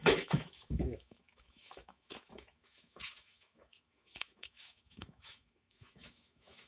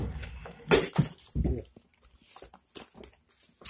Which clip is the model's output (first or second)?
first